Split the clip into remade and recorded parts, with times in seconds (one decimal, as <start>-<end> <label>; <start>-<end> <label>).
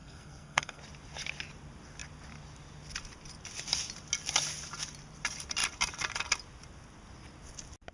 0.0-0.8 remade; 0.8-7.9 recorded